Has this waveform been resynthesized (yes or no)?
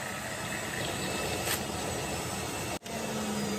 no